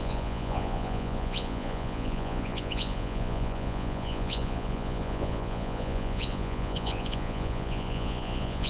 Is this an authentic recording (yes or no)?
no